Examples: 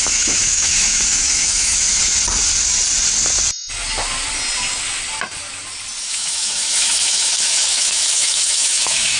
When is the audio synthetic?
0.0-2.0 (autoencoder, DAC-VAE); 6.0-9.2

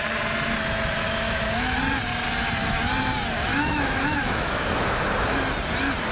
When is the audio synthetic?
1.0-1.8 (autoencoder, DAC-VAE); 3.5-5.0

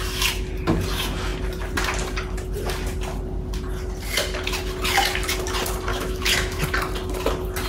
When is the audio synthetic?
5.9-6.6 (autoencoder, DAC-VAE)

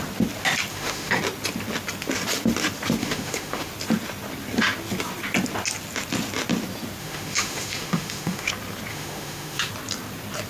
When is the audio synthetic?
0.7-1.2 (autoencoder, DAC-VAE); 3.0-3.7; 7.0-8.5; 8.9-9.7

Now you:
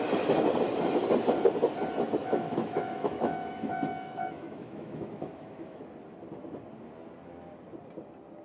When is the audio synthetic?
2.2-5.8 (autoencoder, DAC-VAE)